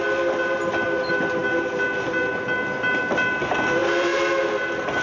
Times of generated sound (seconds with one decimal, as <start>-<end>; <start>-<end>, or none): none